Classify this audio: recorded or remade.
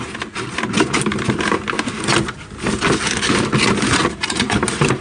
recorded